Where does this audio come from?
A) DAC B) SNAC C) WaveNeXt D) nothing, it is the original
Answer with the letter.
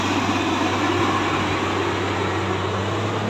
D